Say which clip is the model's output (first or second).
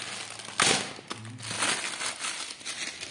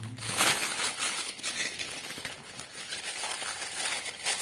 second